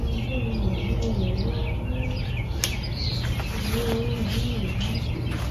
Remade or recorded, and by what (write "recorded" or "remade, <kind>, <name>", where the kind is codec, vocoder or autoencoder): recorded